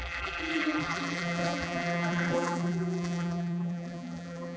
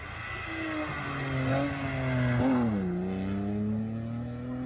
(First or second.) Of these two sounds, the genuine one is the second